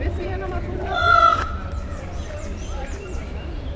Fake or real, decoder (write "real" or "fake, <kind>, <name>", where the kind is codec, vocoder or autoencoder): fake, vocoder, BigVGAN v2